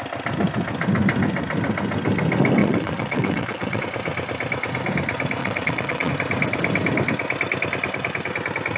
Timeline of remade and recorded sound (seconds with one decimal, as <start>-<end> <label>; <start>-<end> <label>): 0.0-2.6 recorded; 2.6-3.8 remade; 3.8-5.4 recorded; 5.4-6.1 remade; 6.1-8.8 recorded